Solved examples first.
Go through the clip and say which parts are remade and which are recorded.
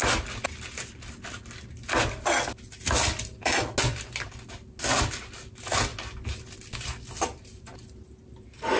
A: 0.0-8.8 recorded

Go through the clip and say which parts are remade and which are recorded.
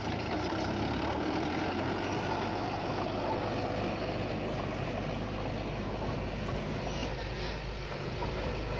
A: 0.0-8.8 recorded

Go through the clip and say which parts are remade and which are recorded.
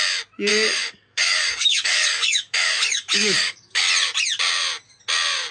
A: 0.0-0.5 recorded; 0.5-3.8 remade; 3.8-5.5 recorded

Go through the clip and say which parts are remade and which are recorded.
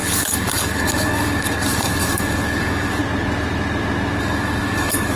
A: 0.0-3.0 remade; 3.0-4.2 recorded; 4.2-5.2 remade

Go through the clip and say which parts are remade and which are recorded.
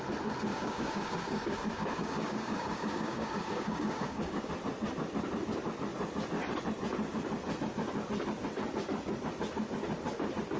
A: 0.0-0.5 recorded; 0.5-4.5 remade; 4.5-10.6 recorded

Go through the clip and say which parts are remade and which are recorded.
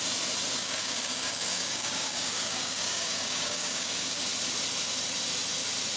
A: 0.0-0.6 recorded; 0.6-4.2 remade; 4.2-6.0 recorded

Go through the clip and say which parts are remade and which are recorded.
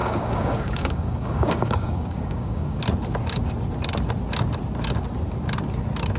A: 0.0-2.8 remade; 2.8-6.2 recorded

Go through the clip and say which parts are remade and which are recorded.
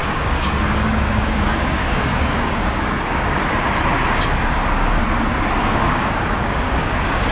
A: 0.0-3.4 remade; 3.4-4.5 recorded; 4.5-5.0 remade; 5.0-5.5 recorded; 5.5-7.3 remade